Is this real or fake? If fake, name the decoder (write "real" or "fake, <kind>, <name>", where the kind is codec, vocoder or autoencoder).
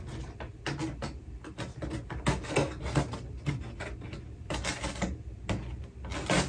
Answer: real